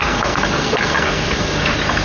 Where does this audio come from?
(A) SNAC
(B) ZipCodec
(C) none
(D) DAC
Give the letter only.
A